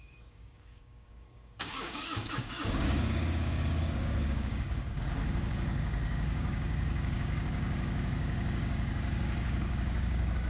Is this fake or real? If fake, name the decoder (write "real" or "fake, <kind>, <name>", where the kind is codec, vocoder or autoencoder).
fake, codec, DAC